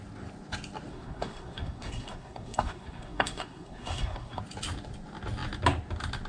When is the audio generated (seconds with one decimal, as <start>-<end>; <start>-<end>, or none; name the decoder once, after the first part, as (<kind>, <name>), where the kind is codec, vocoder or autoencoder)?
0.9-4.4 (codec, SNAC)